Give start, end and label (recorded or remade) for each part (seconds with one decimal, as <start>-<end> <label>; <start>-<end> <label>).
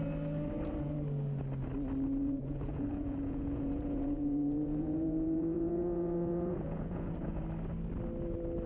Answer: 0.0-2.2 recorded; 2.2-7.4 remade; 7.4-8.7 recorded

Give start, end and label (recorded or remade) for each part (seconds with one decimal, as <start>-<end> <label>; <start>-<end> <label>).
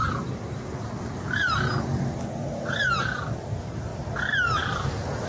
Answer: 0.0-5.3 recorded